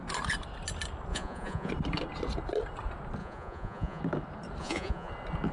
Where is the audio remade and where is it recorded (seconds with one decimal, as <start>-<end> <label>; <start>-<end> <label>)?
0.0-1.1 recorded; 1.1-1.7 remade; 1.7-3.2 recorded; 3.2-4.0 remade; 4.0-4.6 recorded; 4.6-5.1 remade; 5.1-5.5 recorded